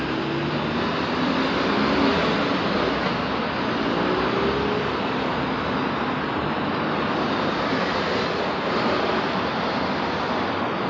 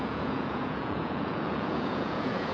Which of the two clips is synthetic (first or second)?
second